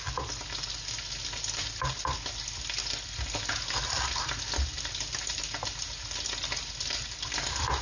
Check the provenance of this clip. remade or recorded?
recorded